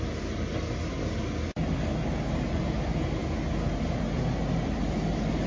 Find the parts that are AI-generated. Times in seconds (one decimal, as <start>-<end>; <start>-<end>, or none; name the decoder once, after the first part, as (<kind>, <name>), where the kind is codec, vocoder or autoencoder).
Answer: none